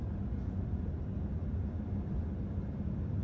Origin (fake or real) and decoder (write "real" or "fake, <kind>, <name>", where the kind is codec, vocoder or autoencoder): real